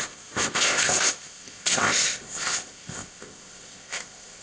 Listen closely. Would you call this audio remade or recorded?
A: remade